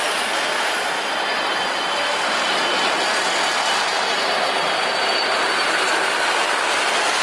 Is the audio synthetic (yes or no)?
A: no